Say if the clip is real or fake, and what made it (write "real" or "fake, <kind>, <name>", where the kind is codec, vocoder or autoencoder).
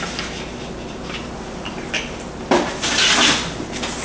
real